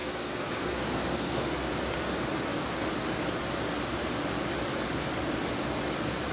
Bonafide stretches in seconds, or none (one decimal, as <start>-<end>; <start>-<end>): 1.7-6.3